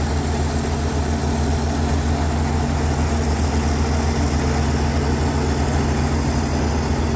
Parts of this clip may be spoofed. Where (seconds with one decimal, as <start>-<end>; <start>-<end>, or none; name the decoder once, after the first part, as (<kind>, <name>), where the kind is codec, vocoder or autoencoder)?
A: none